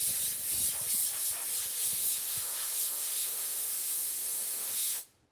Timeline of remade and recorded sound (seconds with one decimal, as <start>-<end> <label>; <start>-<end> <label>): 0.0-1.7 recorded; 1.7-5.3 remade